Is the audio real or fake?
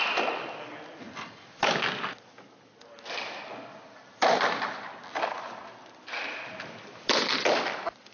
real